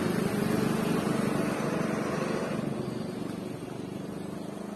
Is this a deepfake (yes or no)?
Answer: no